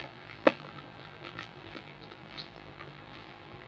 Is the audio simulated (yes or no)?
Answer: yes